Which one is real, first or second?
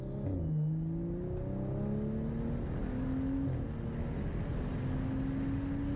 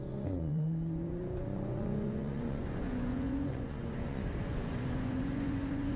first